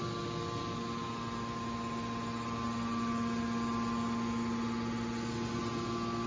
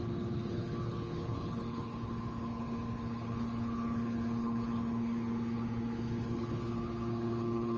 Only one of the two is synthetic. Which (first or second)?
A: second